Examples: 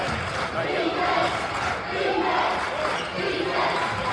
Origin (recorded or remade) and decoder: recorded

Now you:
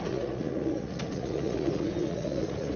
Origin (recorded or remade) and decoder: remade, vocoder, Vocos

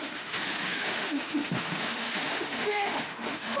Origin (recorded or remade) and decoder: remade, autoencoder, DAC-VAE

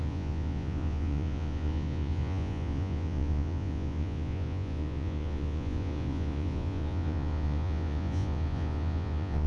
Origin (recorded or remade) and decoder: remade, vocoder, Vocos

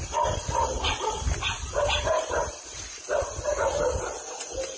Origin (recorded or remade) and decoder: recorded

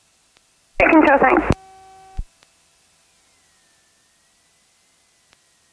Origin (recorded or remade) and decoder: recorded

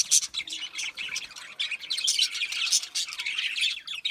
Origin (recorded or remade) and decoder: recorded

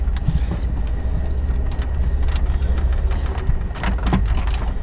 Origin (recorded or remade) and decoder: recorded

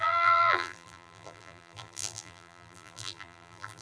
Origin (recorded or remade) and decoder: remade, vocoder, BigVGAN v2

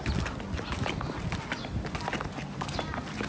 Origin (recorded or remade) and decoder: recorded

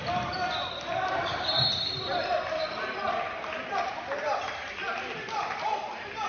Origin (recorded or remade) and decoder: recorded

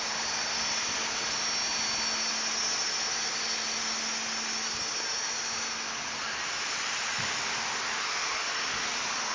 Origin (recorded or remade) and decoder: recorded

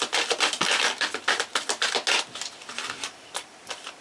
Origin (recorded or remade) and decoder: recorded